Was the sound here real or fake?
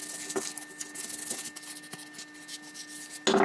real